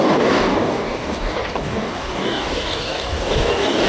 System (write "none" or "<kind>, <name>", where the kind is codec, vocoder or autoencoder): codec, DAC